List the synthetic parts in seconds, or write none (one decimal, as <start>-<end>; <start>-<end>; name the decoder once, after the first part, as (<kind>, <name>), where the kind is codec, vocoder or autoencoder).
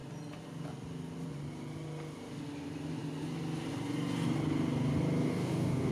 5.2-5.9 (codec, DAC)